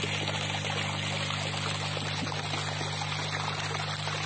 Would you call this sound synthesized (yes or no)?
no